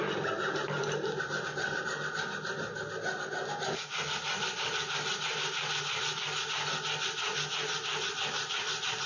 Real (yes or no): yes